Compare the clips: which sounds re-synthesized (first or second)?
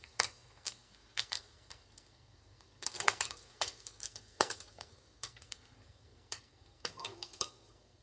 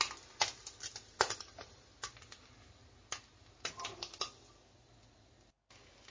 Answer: first